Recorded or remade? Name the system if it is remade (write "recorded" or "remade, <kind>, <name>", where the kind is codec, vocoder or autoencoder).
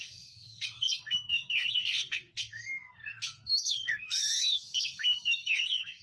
remade, codec, SNAC